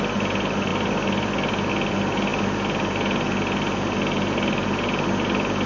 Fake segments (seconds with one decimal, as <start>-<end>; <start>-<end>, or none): none